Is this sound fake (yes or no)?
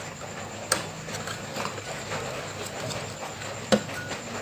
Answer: no